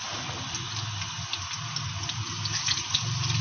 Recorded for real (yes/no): yes